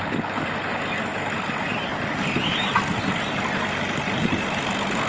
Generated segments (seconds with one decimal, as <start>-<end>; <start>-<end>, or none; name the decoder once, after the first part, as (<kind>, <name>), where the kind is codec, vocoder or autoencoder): none